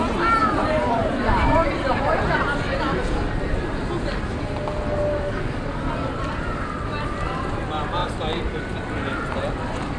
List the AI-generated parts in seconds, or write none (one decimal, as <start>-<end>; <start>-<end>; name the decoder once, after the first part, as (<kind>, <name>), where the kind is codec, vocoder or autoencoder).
0.4-3.3 (vocoder, BigVGAN v2); 8.0-8.9